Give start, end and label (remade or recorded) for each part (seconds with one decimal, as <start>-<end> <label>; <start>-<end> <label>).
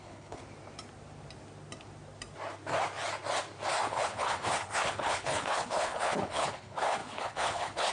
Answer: 0.0-0.4 remade; 0.4-3.9 recorded; 3.9-7.9 remade